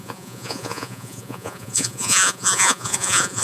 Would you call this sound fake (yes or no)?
yes